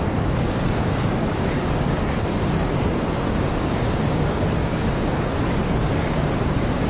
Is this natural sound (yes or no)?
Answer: no